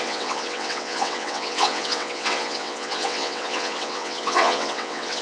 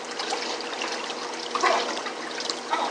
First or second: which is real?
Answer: second